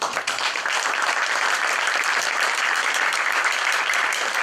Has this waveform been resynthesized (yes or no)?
yes